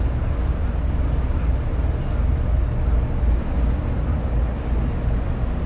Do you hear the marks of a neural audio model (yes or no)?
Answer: no